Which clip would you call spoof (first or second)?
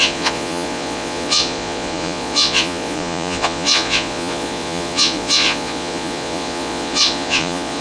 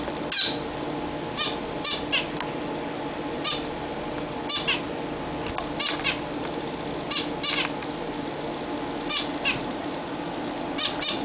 first